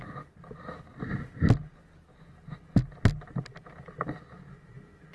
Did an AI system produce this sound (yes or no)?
no